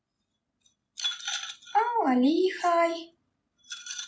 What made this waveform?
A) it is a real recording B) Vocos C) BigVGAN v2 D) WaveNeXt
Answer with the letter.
A